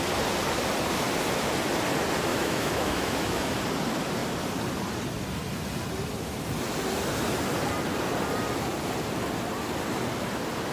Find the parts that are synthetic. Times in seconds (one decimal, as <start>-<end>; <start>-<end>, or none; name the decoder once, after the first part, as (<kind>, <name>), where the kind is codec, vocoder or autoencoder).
2.3-3.5 (autoencoder, DAC-VAE)